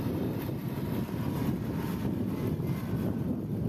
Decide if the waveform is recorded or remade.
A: recorded